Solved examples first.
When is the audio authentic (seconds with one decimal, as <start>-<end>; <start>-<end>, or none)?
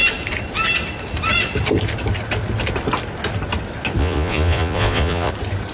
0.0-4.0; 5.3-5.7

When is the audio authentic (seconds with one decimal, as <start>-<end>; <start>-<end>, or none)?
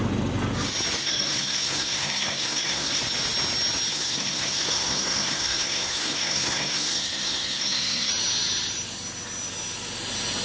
0.0-1.0; 3.0-3.9; 8.1-10.4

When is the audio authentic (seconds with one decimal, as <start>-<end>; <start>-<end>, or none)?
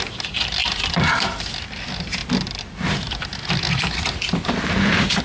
0.0-5.2